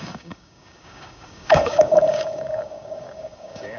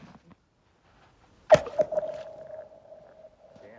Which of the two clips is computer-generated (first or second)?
first